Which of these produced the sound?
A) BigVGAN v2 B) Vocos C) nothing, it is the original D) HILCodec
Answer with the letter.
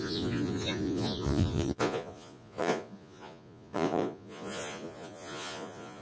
B